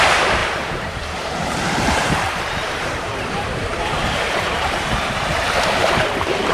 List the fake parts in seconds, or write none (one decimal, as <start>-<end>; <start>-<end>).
0.0-6.5